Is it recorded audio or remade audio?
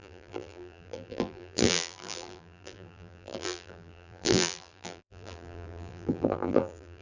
remade